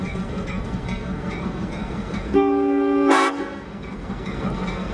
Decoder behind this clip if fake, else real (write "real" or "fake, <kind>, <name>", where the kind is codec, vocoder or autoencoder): fake, codec, SNAC